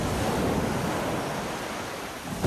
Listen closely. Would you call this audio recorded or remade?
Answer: recorded